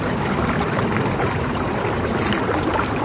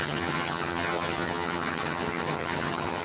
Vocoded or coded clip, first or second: second